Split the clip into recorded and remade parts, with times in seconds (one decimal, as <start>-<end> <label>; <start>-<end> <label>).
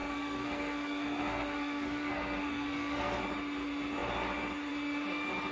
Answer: 0.0-3.2 remade; 3.2-5.5 recorded